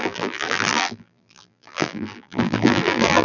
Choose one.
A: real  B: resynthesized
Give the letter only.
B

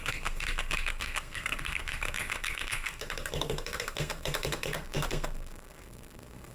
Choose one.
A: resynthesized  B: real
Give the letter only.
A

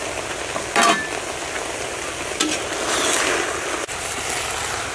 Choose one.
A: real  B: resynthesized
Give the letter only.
A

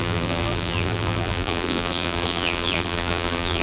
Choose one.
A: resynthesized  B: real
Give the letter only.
A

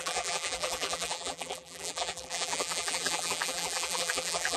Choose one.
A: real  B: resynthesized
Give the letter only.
B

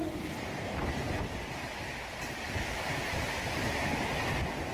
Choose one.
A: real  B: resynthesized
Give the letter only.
A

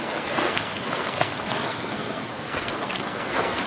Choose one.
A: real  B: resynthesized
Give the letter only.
B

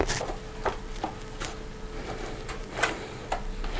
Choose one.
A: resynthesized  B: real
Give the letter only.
B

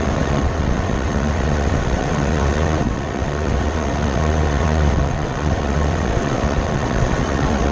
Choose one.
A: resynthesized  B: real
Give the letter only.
A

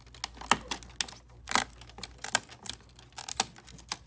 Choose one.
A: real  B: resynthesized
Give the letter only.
A